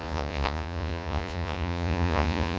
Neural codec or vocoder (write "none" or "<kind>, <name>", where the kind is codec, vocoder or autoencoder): vocoder, Vocos